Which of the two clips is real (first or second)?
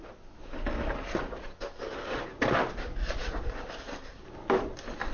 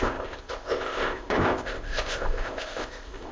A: first